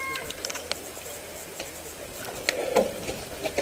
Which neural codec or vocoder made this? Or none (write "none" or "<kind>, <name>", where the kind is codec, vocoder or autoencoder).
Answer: none